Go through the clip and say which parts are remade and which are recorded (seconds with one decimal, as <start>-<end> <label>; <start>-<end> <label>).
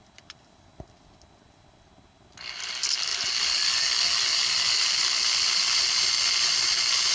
0.0-7.1 recorded